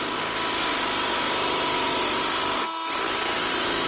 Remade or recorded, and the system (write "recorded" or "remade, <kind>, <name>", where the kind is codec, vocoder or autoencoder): recorded